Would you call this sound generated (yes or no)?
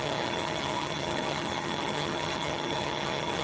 yes